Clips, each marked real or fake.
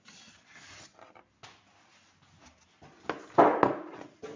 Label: real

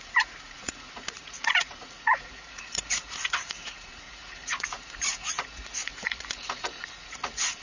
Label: fake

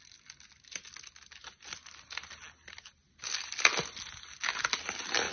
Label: real